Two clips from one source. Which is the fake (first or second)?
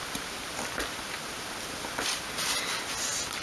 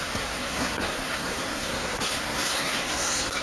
second